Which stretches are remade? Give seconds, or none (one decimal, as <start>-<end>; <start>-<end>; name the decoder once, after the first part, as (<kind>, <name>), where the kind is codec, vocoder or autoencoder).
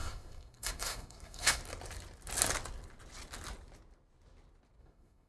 0.0-1.6 (codec, SNAC); 4.8-5.3